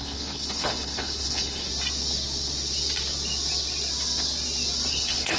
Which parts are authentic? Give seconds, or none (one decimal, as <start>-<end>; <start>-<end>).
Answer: 1.7-4.9